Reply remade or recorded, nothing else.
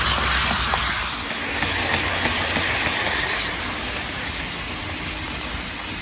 recorded